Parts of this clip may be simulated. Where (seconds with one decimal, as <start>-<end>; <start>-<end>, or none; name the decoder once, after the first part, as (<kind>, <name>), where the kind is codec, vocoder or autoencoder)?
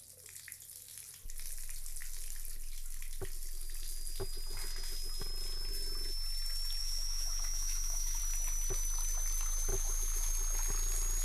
6.8-8.2 (autoencoder, DAC-VAE); 9.7-10.3